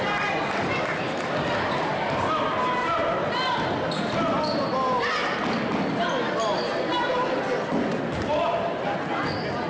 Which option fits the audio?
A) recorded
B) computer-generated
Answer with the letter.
A